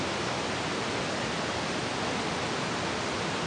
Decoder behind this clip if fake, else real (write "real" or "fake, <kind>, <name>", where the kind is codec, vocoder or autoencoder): real